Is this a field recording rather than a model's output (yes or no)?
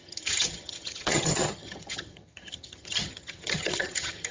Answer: no